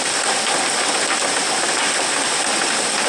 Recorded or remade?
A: recorded